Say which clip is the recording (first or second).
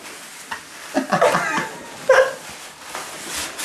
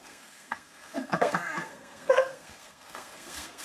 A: first